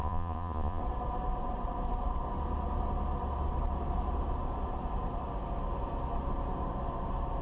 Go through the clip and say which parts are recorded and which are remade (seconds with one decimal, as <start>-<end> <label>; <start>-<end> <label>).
0.0-0.8 remade; 0.8-7.4 recorded